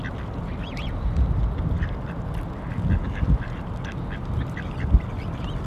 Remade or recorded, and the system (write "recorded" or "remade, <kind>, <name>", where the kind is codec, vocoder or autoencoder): recorded